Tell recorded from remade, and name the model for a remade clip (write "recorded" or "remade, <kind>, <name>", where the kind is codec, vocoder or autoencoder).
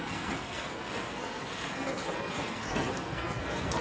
remade, codec, SNAC